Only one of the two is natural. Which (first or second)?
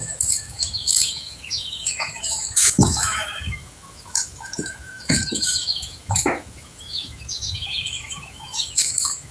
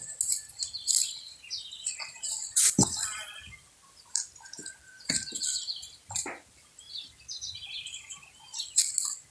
second